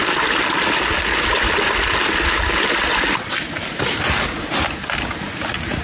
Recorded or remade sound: recorded